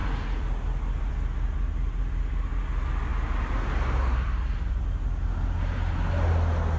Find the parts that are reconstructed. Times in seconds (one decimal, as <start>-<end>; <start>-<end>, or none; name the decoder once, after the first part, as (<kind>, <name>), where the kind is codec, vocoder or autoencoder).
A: none